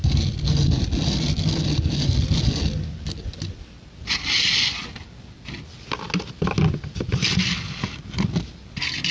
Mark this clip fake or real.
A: real